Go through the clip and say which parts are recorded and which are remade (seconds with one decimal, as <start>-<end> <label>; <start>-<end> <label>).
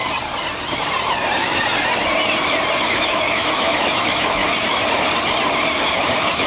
0.0-2.8 recorded; 2.8-4.4 remade; 4.4-5.8 recorded; 5.8-6.5 remade